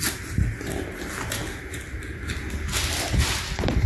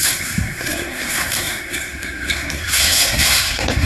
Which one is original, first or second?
first